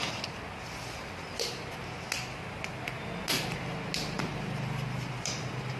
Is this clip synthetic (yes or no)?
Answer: no